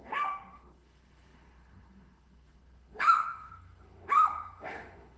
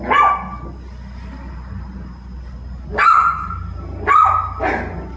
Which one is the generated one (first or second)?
first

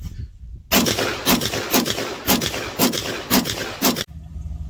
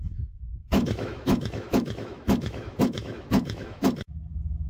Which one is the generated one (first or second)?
second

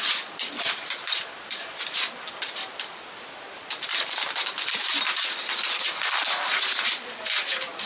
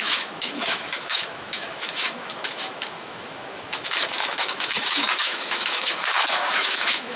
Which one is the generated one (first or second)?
second